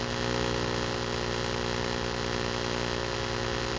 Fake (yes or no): no